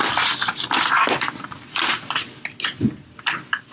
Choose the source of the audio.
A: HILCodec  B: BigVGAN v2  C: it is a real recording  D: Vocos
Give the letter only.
C